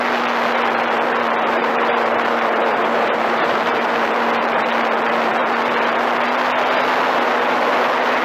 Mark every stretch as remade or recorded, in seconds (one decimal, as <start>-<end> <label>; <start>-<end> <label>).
0.0-1.6 recorded; 1.6-3.9 remade; 3.9-8.2 recorded